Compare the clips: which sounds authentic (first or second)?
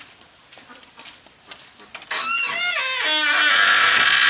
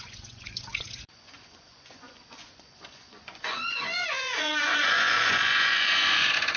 first